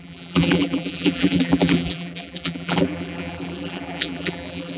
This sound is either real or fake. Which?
fake